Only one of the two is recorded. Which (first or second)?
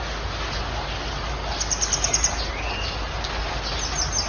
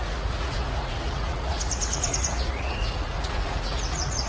first